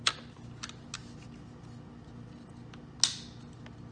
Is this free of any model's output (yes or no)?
yes